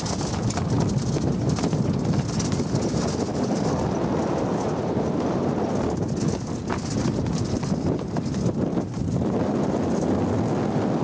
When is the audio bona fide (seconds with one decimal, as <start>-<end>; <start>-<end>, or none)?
0.0-3.3; 3.8-11.0